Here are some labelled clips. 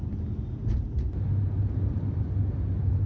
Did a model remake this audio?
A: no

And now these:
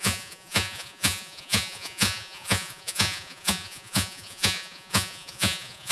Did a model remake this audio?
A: yes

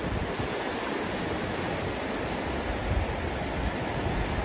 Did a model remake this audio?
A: no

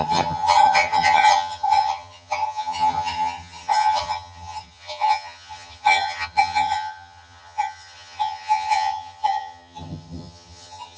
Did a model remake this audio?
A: yes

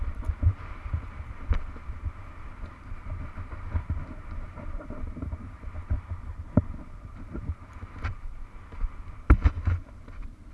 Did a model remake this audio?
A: yes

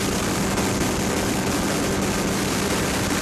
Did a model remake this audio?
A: no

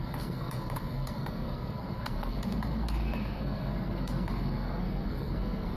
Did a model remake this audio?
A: yes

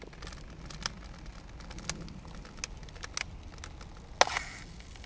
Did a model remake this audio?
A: no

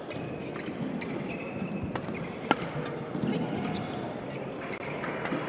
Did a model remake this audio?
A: no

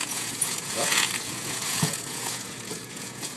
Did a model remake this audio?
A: yes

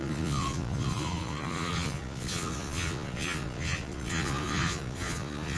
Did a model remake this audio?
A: yes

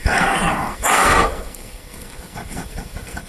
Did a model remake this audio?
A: yes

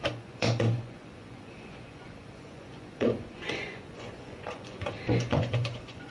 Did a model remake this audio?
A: yes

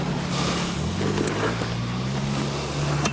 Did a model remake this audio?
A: no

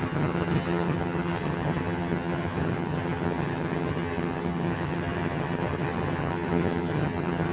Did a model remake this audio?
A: yes